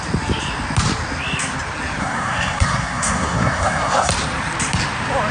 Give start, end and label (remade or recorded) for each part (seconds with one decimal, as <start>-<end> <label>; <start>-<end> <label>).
0.0-2.0 recorded; 2.0-4.1 remade; 4.1-5.3 recorded